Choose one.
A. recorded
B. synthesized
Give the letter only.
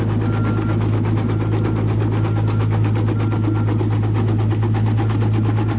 A